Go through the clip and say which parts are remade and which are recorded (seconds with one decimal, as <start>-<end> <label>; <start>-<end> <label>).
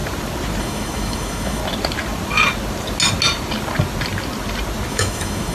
0.0-0.6 recorded; 0.6-1.6 remade; 1.6-4.9 recorded; 4.9-5.5 remade